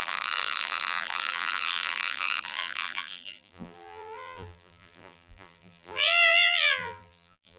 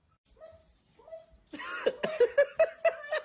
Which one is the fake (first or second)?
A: first